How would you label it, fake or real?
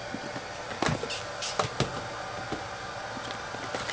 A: real